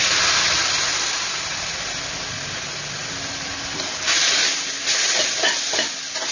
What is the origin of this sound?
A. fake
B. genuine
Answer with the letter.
B